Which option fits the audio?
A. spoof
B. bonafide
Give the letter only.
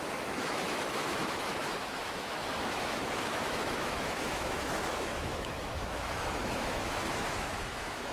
A